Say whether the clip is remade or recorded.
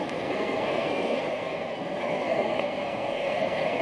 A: remade